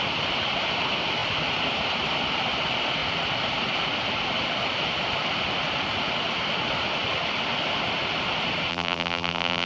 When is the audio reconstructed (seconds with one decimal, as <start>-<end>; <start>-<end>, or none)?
8.7-9.7